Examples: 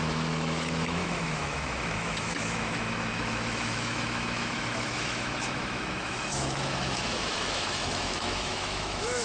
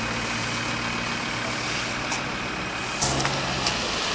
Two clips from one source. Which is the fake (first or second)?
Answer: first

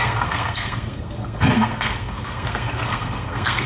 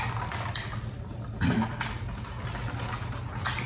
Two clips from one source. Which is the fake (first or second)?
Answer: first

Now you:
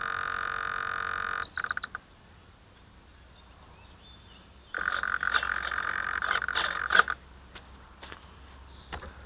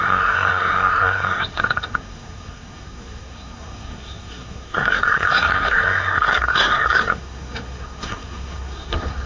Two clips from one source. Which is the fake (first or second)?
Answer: second